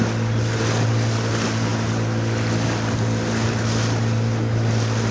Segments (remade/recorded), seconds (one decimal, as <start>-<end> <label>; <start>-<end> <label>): 0.0-5.1 recorded